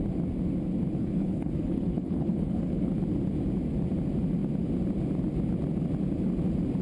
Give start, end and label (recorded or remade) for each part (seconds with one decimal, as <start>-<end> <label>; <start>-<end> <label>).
0.0-1.0 recorded; 1.0-2.9 remade; 2.9-6.8 recorded

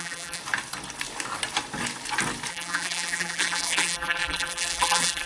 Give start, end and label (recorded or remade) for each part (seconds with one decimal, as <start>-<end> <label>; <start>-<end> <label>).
0.0-0.4 remade; 0.4-2.5 recorded; 2.5-5.3 remade

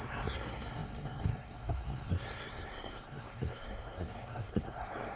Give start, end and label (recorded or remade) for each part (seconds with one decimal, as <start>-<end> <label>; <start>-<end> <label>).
0.0-5.2 remade